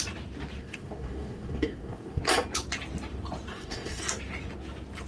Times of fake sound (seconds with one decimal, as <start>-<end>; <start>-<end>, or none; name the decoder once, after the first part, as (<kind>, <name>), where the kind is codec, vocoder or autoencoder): 0.6-2.2 (codec, DAC); 3.5-4.0